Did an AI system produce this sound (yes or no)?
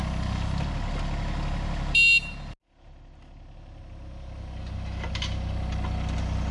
no